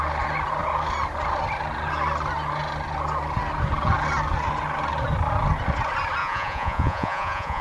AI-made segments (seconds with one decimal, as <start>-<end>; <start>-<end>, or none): 6.2-7.6